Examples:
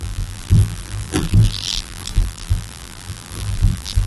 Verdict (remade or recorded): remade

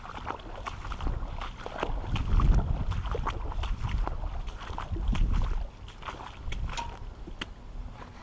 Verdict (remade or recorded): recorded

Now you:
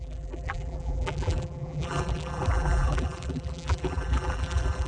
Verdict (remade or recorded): remade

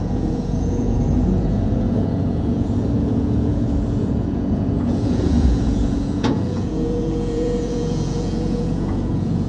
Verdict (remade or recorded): remade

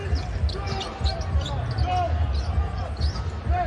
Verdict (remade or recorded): recorded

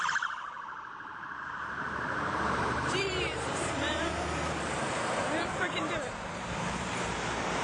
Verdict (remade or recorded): remade